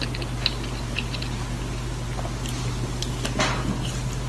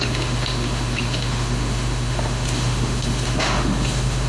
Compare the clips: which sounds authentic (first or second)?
first